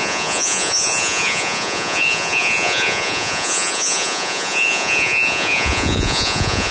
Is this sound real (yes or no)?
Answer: no